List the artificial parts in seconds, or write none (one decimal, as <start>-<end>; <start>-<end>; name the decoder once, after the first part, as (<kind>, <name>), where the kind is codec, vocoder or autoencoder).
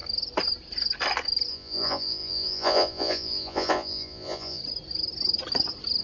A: 1.5-4.6 (vocoder, Vocos)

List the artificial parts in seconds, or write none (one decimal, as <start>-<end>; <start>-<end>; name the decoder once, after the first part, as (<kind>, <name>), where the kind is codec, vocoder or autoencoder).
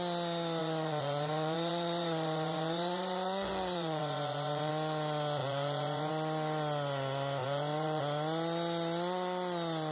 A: 0.6-4.7 (vocoder, Vocos); 5.4-6.1; 7.4-8.0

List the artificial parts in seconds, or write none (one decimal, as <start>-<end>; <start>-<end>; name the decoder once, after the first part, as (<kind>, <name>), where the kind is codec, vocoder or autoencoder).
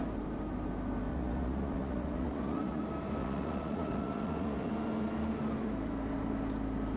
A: 1.1-2.8 (vocoder, Vocos); 3.2-4.7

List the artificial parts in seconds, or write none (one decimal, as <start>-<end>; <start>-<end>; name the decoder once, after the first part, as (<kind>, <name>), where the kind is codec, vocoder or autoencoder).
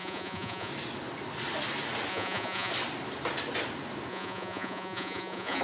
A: 0.0-0.7 (vocoder, Vocos); 2.1-2.7; 4.1-5.6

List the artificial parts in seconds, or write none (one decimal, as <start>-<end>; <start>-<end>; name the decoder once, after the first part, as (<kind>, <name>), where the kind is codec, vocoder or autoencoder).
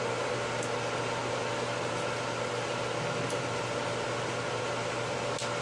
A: none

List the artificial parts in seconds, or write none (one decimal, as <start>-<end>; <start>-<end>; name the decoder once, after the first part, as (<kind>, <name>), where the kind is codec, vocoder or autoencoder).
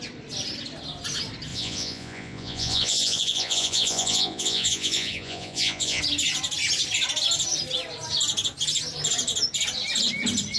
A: 1.5-6.0 (vocoder, Vocos)